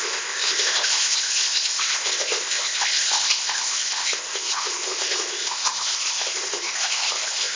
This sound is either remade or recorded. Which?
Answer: remade